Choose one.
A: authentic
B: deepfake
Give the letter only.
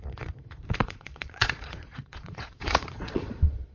B